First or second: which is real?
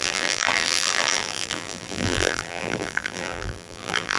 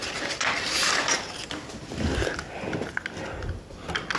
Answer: second